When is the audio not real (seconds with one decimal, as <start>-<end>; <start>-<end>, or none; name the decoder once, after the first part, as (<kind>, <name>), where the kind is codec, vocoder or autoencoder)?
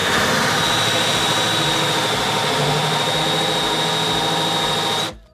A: none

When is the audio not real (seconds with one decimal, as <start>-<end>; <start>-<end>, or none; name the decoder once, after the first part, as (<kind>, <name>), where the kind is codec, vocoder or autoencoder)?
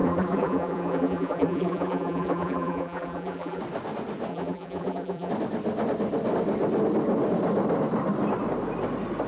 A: 0.0-3.6 (vocoder, BigVGAN v2); 4.3-5.3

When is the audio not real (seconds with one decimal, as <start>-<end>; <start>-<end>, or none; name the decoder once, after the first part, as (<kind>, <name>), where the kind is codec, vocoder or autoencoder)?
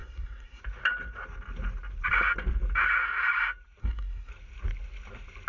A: 0.0-0.6 (codec, SNAC); 3.8-4.3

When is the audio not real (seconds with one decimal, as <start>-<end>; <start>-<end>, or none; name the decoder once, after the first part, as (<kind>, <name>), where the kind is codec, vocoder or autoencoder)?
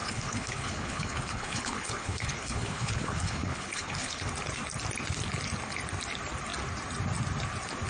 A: 0.0-4.3 (codec, HILCodec)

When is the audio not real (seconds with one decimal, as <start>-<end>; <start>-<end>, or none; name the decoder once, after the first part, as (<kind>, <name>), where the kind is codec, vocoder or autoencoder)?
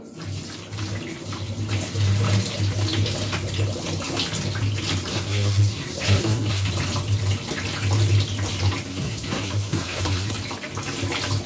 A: 5.1-6.7 (codec, SNAC); 8.9-10.3